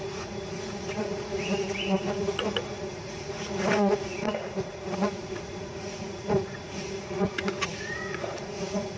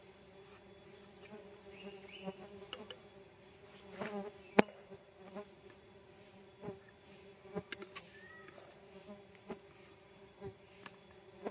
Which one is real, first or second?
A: second